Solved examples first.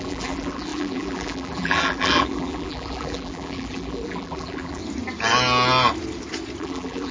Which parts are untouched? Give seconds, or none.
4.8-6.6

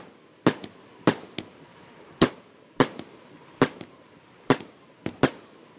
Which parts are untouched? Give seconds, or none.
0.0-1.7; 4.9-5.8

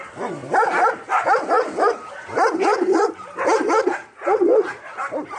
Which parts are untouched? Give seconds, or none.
0.0-0.4; 3.6-5.4

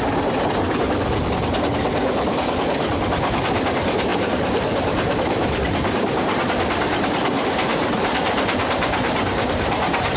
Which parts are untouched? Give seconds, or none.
0.0-4.1; 6.6-7.7

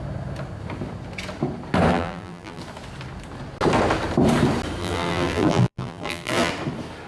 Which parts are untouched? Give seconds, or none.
0.0-1.9; 2.6-4.8; 6.5-7.1

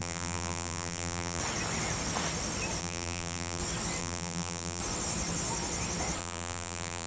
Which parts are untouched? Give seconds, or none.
1.4-2.8; 3.6-4.0; 4.8-6.2

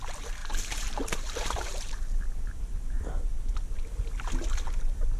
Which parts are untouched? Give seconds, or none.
0.0-0.4; 3.5-5.2